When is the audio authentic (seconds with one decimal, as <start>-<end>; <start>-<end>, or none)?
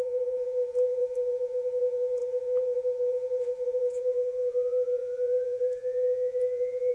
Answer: none